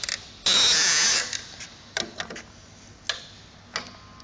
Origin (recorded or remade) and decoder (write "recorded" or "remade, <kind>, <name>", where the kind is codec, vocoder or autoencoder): recorded